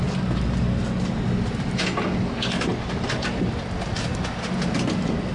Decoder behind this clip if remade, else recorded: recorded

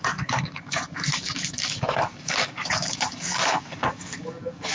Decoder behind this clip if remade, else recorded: remade, codec, DAC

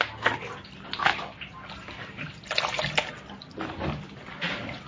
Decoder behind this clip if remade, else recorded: recorded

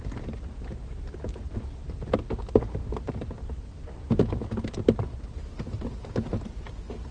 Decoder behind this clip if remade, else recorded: recorded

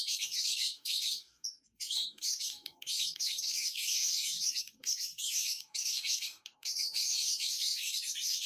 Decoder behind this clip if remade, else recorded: remade, codec, DAC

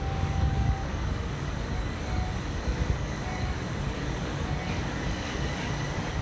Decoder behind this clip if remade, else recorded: remade, codec, DAC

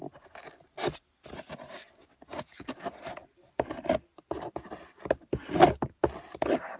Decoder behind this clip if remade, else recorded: recorded